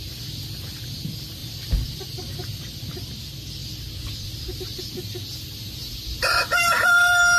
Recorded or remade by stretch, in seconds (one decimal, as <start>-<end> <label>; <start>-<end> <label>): 0.0-1.4 recorded; 1.4-3.1 remade; 3.1-7.4 recorded